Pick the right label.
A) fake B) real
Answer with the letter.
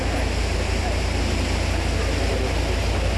B